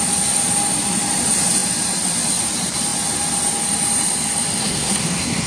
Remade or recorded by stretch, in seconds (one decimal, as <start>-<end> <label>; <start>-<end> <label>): 0.0-4.6 recorded; 4.6-5.5 remade